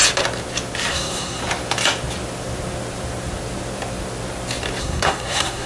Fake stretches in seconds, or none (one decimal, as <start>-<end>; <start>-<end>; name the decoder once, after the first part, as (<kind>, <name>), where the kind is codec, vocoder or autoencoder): 0.9-1.4 (codec, SNAC); 4.8-5.7